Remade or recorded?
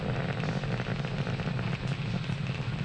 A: recorded